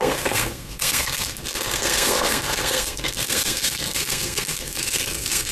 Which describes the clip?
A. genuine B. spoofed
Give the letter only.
B